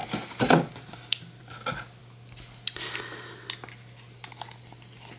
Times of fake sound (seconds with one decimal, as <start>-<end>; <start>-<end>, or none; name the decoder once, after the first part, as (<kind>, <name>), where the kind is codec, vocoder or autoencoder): none